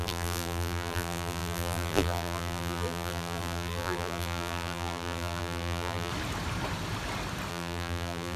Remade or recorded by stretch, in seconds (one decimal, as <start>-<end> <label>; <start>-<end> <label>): 0.0-6.1 remade; 6.1-7.5 recorded; 7.5-8.4 remade